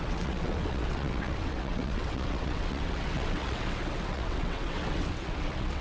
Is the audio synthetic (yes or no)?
yes